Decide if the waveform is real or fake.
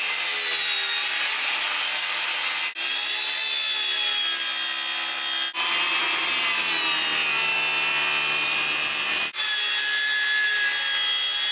real